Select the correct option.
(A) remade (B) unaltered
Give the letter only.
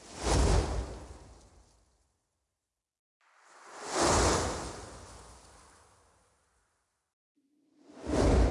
B